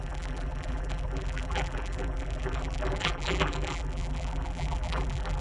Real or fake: fake